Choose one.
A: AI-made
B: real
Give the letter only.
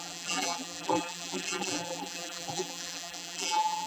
A